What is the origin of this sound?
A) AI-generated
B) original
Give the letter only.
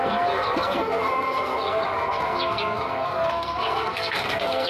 A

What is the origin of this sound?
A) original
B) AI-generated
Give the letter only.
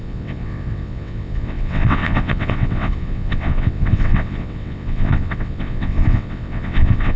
B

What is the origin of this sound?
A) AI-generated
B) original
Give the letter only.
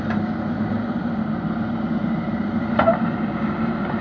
A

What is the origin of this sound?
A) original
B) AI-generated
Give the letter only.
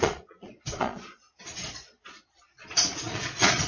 B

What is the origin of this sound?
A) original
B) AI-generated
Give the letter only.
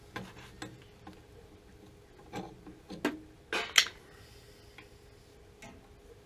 A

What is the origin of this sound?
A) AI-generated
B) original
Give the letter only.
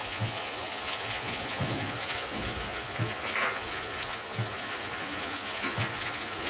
A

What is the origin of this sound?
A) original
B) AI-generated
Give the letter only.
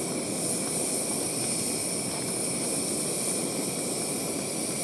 A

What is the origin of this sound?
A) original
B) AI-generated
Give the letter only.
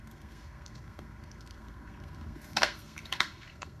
B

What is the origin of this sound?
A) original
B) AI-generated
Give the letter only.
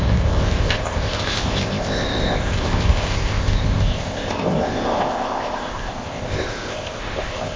B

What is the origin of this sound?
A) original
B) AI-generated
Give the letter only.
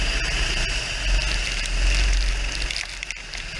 A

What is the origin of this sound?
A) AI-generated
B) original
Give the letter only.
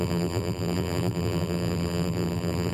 A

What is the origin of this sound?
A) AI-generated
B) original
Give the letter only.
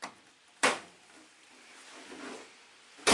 B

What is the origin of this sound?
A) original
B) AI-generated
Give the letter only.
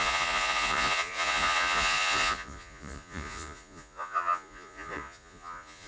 B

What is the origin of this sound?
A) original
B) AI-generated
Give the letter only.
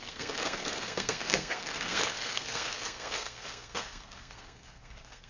B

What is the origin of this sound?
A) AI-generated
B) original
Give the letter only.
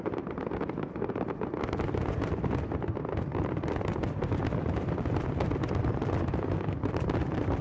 A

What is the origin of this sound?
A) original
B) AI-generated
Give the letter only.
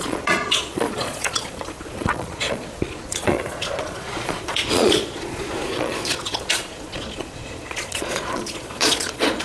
B